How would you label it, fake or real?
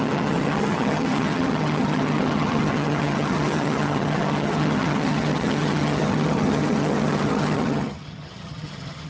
fake